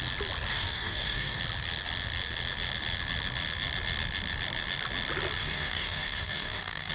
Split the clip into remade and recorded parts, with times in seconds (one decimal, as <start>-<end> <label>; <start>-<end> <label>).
0.0-0.5 recorded; 0.5-1.4 remade; 1.4-5.4 recorded; 5.4-6.9 remade